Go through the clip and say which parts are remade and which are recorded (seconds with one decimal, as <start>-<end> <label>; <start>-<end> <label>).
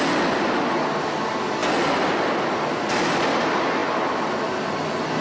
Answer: 0.0-5.2 recorded